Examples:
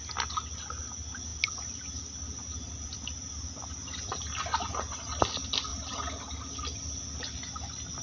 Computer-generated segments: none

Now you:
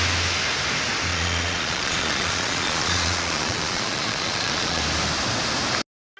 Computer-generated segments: 1.1-4.8 (vocoder, Vocos)